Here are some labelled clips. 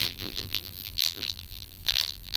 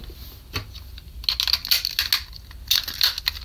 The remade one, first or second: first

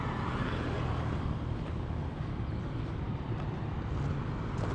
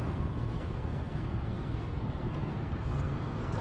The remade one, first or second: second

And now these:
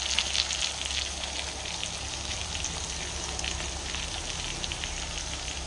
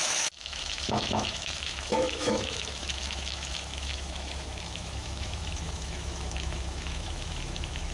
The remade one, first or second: second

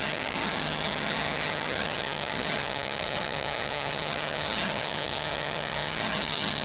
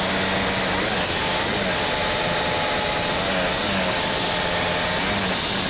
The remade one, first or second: first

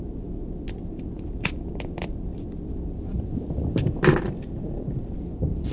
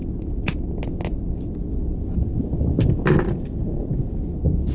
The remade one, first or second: first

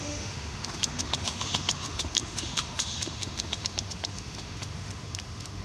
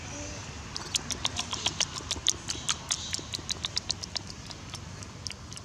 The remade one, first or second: first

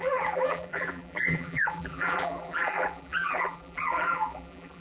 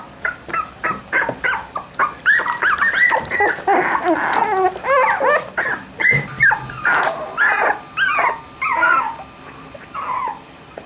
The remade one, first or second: first